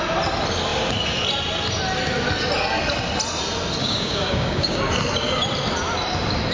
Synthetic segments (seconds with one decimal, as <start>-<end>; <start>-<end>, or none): 3.8-4.8